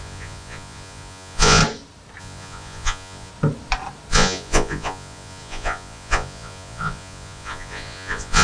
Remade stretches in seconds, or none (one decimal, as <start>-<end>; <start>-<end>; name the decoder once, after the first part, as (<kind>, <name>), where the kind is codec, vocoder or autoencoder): 0.0-1.6 (vocoder, Vocos); 2.2-3.3; 4.1-8.4